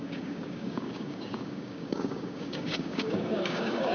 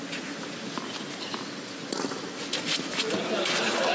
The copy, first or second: first